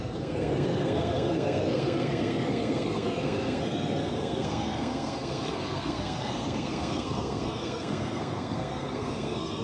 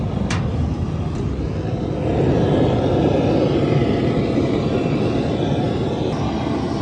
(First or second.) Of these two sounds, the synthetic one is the first